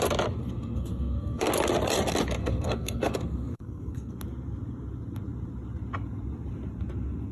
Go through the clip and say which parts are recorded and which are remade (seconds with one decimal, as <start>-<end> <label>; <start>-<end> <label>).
0.0-0.4 recorded; 0.4-1.5 remade; 1.5-2.4 recorded; 2.4-4.1 remade; 4.1-7.3 recorded